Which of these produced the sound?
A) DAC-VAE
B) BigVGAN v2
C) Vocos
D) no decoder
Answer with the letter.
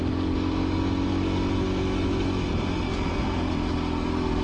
D